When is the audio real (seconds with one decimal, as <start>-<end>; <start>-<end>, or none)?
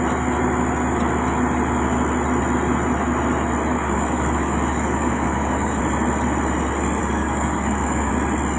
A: 0.0-3.7; 5.8-7.0; 8.1-8.6